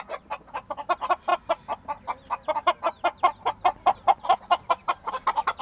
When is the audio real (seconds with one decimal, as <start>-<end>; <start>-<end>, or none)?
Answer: 0.0-5.6